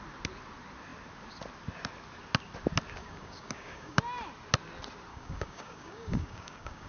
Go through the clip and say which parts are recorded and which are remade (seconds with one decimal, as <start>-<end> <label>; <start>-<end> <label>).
0.0-3.0 recorded; 3.0-4.0 remade; 4.0-5.1 recorded; 5.1-6.9 remade